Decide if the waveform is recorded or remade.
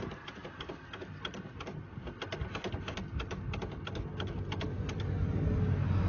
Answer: recorded